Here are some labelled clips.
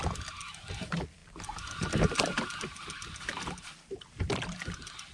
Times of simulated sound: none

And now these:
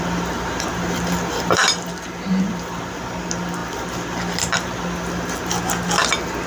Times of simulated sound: 0.7-2.9 (vocoder, BigVGAN v2); 3.6-4.8

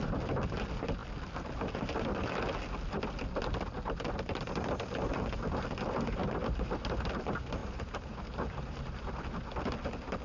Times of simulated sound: 6.2-7.1 (vocoder, BigVGAN v2); 7.6-9.1